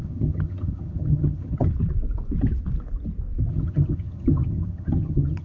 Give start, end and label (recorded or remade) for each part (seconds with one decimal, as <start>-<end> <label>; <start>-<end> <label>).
0.0-1.7 remade; 1.7-3.5 recorded; 3.5-5.4 remade